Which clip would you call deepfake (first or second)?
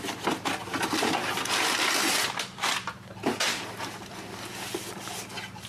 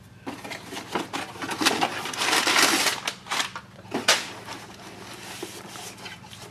second